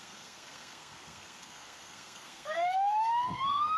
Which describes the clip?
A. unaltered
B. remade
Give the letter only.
B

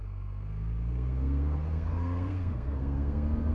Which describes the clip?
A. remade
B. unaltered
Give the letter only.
A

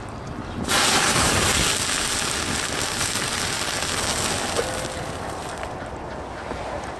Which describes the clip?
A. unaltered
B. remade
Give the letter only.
A